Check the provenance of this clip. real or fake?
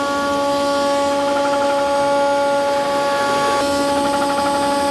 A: real